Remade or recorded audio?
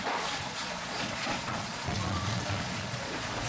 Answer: remade